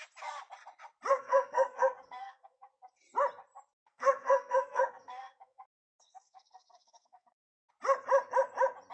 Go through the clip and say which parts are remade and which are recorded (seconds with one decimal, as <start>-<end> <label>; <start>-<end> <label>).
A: 0.0-1.1 recorded; 1.1-2.7 remade; 2.7-3.8 recorded; 3.8-7.7 remade; 7.7-8.9 recorded